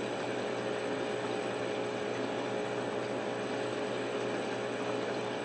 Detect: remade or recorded recorded